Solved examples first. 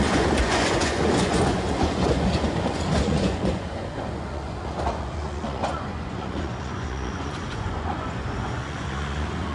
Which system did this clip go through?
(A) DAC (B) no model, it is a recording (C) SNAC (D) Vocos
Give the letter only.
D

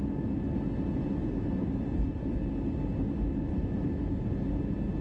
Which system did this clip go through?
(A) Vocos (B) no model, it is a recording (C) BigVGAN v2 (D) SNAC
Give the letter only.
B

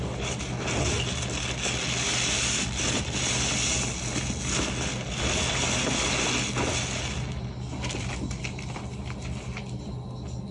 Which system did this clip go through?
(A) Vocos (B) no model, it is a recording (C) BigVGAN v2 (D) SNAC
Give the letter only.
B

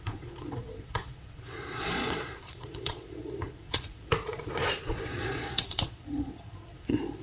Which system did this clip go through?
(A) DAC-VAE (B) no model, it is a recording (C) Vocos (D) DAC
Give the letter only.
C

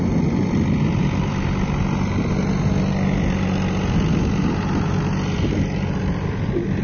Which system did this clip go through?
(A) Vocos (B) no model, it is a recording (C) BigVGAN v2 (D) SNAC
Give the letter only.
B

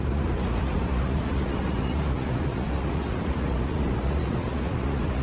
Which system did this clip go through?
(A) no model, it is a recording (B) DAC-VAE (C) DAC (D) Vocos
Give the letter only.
D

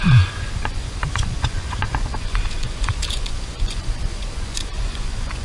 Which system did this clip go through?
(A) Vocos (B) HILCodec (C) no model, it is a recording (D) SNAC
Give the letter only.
A